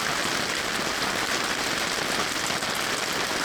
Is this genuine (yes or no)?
yes